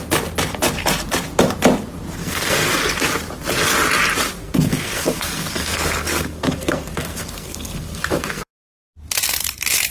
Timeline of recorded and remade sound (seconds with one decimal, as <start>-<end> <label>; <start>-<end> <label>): 0.0-2.2 recorded; 2.2-2.7 remade; 2.7-4.3 recorded; 4.3-8.5 remade; 8.5-9.9 recorded